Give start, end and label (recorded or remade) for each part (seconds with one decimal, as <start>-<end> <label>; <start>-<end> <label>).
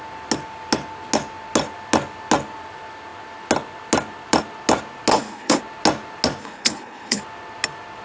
0.0-5.1 recorded; 5.1-5.6 remade; 5.6-6.4 recorded; 6.4-7.2 remade; 7.2-8.0 recorded